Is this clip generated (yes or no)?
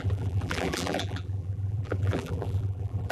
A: yes